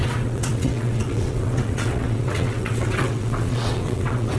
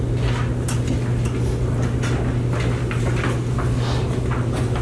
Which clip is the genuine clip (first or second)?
second